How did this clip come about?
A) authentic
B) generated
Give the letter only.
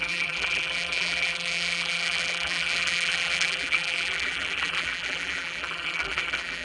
B